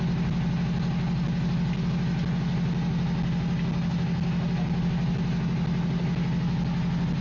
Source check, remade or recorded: recorded